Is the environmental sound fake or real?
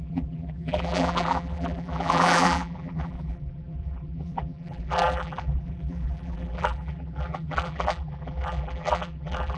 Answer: fake